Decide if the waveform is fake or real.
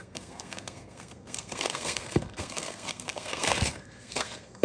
fake